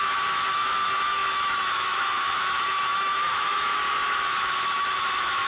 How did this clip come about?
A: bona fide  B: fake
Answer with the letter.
B